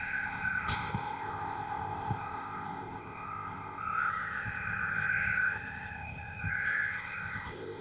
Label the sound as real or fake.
fake